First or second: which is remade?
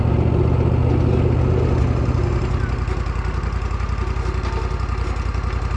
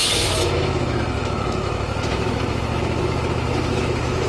second